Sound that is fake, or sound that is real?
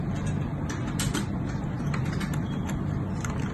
real